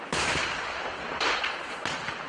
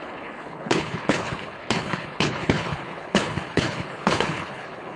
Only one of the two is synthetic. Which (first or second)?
second